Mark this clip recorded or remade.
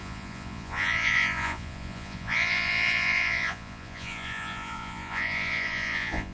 remade